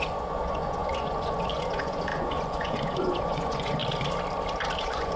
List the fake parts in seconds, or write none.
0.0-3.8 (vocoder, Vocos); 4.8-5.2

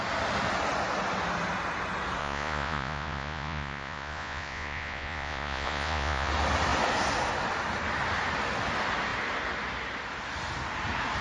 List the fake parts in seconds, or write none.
2.2-6.3 (vocoder, Vocos)

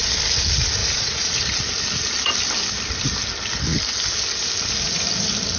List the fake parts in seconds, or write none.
0.8-1.4 (vocoder, Vocos)

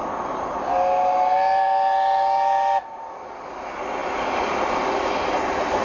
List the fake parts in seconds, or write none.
none

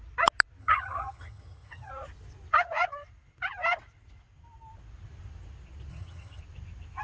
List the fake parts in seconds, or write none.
0.6-1.9 (vocoder, HiFi-GAN); 5.9-6.4

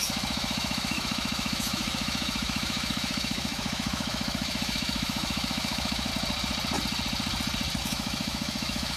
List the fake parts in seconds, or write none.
0.0-6.1 (autoencoder, DAC-VAE); 7.8-9.0

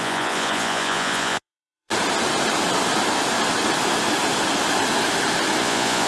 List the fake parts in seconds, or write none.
0.0-1.9 (vocoder, Vocos); 5.6-6.1